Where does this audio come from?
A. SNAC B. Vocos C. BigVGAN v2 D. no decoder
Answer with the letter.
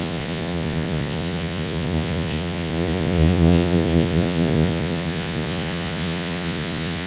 B